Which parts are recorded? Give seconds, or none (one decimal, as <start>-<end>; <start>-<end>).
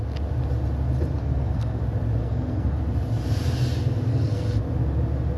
0.0-1.2; 1.8-2.2; 2.8-4.1; 4.6-5.4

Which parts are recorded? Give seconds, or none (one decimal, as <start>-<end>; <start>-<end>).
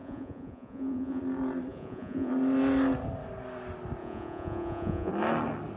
1.2-1.7; 2.3-4.0; 5.1-5.8